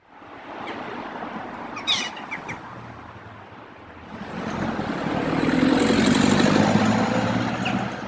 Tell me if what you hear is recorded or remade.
recorded